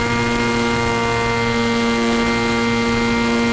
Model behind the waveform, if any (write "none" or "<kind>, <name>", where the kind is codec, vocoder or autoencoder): none